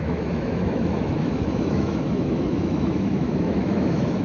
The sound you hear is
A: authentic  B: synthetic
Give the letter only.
B